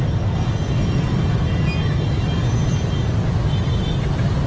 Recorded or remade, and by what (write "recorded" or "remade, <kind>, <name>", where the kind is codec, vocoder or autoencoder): recorded